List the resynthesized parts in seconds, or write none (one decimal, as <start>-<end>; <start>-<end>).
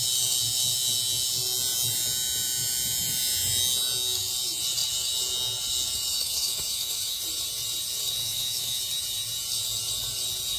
6.1-7.2; 8.2-8.8